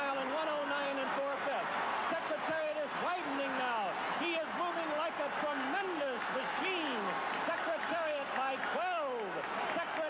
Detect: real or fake real